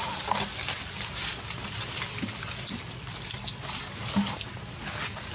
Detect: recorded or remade recorded